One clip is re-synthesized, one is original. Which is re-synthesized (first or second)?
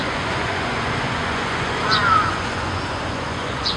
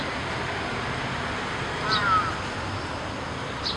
first